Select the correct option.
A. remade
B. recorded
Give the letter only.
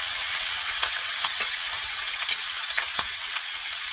A